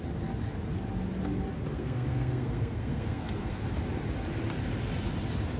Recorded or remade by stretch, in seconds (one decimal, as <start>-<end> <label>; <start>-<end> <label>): 0.0-1.7 recorded; 1.7-3.6 remade; 3.6-5.6 recorded